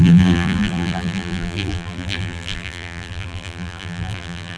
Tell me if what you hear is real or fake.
fake